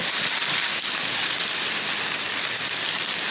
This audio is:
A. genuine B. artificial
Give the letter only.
A